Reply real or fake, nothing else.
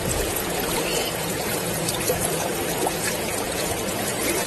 fake